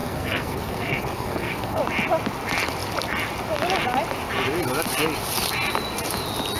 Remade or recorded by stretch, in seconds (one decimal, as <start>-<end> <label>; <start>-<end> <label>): 0.0-1.8 remade; 1.8-6.6 recorded